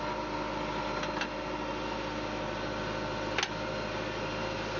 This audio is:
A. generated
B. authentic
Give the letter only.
B